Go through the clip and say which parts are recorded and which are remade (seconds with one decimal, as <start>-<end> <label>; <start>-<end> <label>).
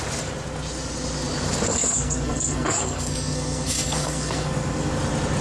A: 0.0-1.7 recorded; 1.7-4.9 remade; 4.9-5.4 recorded